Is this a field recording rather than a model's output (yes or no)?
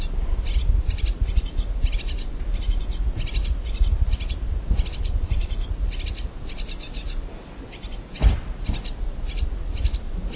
yes